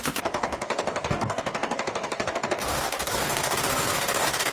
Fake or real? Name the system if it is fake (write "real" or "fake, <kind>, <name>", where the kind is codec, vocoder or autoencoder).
fake, codec, DAC